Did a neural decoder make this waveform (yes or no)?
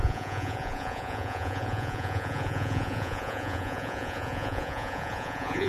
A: yes